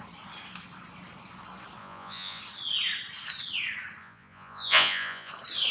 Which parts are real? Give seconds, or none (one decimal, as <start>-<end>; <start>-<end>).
0.0-1.8; 2.4-4.0; 5.3-5.7